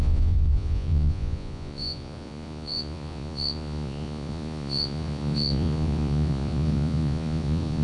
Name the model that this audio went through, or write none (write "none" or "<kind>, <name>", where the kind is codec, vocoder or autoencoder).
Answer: vocoder, Vocos